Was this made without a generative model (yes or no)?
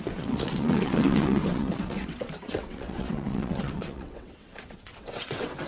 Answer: no